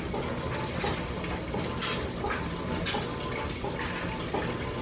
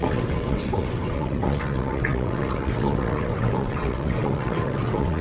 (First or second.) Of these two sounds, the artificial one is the second